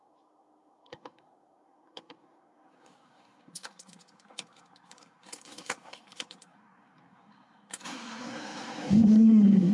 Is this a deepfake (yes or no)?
yes